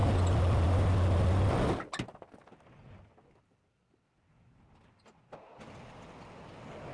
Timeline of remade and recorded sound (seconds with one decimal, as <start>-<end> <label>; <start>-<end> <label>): 0.0-6.9 recorded